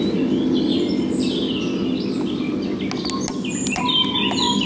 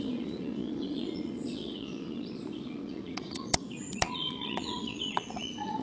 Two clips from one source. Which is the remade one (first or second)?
second